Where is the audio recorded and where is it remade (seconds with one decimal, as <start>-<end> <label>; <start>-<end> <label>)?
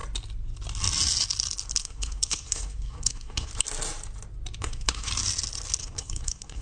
0.0-1.8 recorded; 1.8-3.5 remade; 3.5-4.6 recorded; 4.6-5.1 remade; 5.1-5.8 recorded; 5.8-6.6 remade